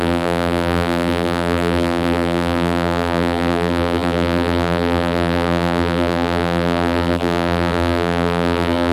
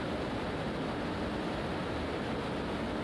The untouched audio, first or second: second